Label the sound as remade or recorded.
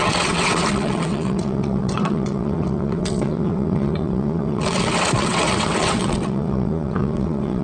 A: remade